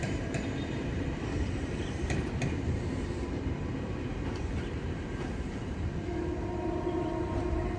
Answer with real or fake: fake